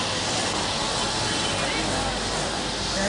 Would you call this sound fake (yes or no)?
no